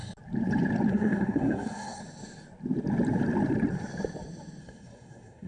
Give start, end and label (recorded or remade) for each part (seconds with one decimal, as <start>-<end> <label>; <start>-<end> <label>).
0.0-0.9 recorded; 0.9-2.0 remade; 2.0-4.6 recorded; 4.6-5.5 remade

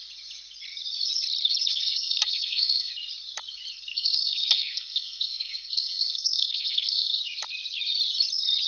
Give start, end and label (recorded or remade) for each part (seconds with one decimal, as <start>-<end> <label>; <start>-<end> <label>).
0.0-1.7 recorded; 1.7-2.9 remade; 2.9-3.9 recorded; 3.9-7.2 remade; 7.2-8.7 recorded

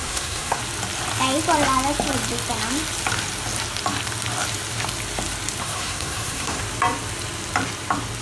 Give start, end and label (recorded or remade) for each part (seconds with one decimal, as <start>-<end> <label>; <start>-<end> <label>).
0.0-0.6 remade; 0.6-5.6 recorded; 5.6-6.6 remade; 6.6-8.2 recorded

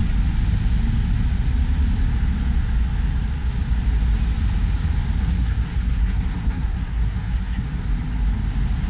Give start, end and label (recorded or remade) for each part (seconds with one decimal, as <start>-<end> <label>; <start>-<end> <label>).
0.0-5.2 recorded; 5.2-7.6 remade; 7.6-8.9 recorded

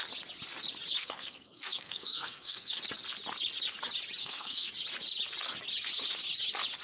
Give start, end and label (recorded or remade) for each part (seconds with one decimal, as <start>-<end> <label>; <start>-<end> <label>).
0.0-1.0 recorded; 1.0-2.8 remade; 2.8-4.2 recorded; 4.2-4.7 remade; 4.7-6.8 recorded

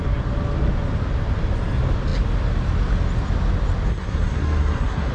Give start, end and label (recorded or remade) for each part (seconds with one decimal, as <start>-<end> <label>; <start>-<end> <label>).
0.0-3.9 recorded; 3.9-5.1 remade

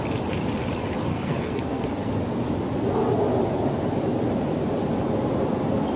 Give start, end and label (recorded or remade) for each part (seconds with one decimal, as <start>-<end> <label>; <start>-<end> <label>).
0.0-1.1 recorded; 1.1-2.1 remade; 2.1-6.0 recorded